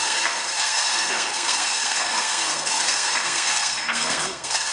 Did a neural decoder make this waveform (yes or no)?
yes